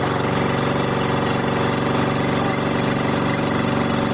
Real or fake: real